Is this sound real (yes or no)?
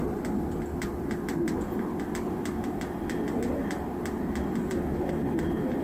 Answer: yes